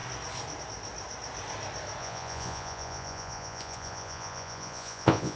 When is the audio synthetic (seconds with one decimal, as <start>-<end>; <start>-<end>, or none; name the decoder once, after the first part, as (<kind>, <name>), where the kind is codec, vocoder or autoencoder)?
2.0-5.4 (vocoder, Vocos)